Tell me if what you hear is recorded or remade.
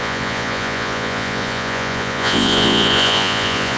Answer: remade